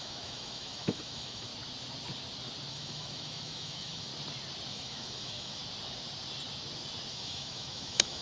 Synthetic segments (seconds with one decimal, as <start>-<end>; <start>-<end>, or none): 0.0-1.5; 2.7-4.1; 4.7-5.6; 7.1-8.2

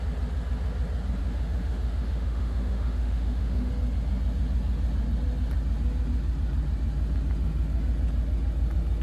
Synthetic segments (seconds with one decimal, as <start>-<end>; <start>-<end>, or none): 1.2-3.7